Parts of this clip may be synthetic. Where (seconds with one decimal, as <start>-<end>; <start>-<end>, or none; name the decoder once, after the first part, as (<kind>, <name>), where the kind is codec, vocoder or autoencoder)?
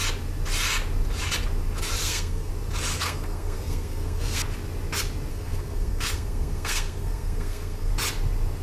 2.0-2.5 (codec, SNAC); 2.9-4.4; 5.3-7.9